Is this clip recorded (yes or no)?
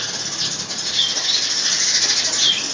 yes